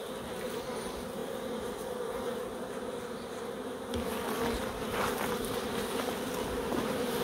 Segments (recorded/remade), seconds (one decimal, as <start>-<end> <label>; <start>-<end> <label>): 0.0-7.2 recorded